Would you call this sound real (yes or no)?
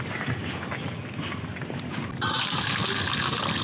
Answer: yes